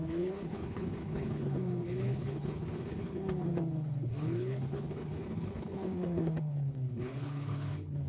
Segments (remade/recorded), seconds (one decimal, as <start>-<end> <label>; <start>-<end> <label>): 0.0-8.1 remade

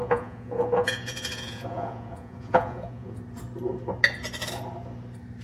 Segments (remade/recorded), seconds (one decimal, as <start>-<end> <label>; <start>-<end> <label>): 0.0-3.2 remade; 3.2-5.4 recorded

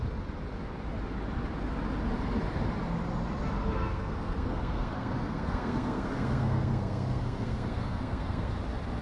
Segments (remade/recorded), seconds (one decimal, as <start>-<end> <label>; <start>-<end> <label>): 0.0-3.6 recorded; 3.6-8.5 remade; 8.5-9.0 recorded

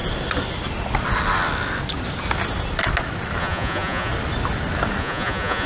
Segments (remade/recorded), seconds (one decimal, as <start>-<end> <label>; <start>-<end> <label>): 0.0-3.4 recorded; 3.4-4.1 remade; 4.1-5.0 recorded; 5.0-5.7 remade

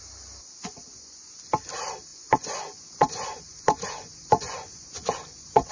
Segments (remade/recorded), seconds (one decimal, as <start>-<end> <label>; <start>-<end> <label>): 0.0-0.6 recorded; 0.6-1.4 remade; 1.4-2.1 recorded; 2.1-5.7 remade

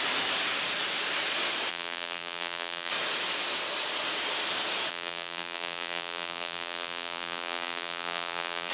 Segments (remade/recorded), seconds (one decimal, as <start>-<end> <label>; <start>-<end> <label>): 0.0-1.7 recorded; 1.7-2.9 remade; 2.9-4.9 recorded; 4.9-8.7 remade

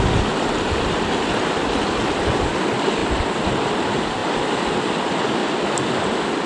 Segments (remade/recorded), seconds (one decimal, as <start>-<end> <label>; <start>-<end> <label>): 0.0-4.2 recorded; 4.2-4.8 remade; 4.8-5.4 recorded; 5.4-6.5 remade